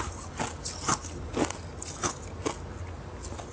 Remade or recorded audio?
recorded